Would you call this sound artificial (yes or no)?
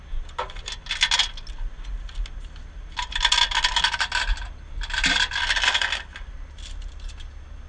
no